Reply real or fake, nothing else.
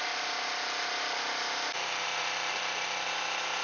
real